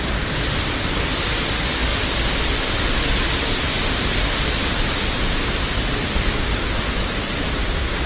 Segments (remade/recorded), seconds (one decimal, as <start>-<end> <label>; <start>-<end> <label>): 0.0-8.1 recorded